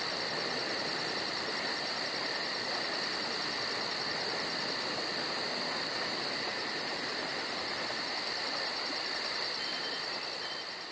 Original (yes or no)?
yes